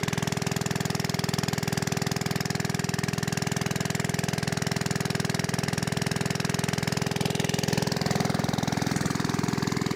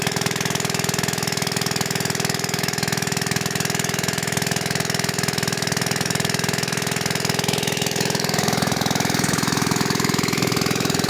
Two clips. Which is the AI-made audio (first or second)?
second